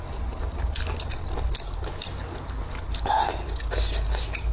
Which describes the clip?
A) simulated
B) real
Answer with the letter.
B